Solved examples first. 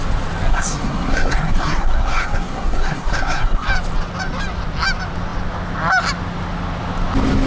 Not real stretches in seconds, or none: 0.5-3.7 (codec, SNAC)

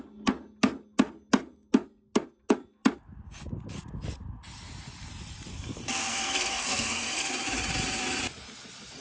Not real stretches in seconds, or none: 5.5-7.3 (codec, SNAC)

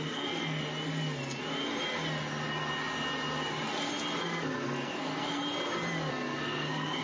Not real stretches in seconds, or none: 0.0-0.6 (codec, SNAC); 4.2-5.4; 6.1-7.0

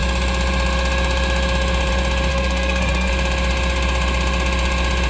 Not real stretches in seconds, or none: 2.3-3.1 (codec, SNAC)

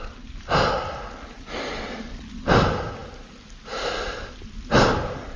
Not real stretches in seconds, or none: none

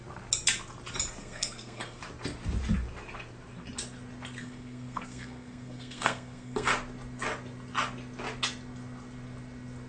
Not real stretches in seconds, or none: 1.2-2.0 (codec, SNAC); 4.4-6.7